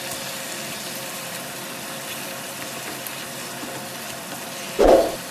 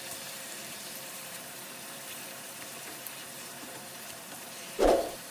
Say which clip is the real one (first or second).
first